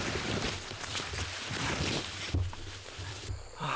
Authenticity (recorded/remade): remade